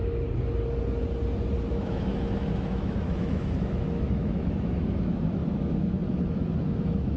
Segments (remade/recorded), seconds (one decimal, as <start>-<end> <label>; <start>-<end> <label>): 0.0-1.7 recorded; 1.7-7.2 remade